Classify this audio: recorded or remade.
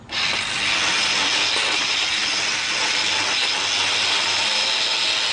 recorded